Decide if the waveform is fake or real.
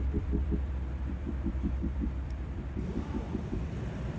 fake